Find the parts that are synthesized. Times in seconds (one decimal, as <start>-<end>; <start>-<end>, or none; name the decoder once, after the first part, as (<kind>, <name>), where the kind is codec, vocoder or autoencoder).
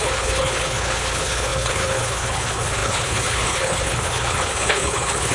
0.0-5.3 (codec, HILCodec)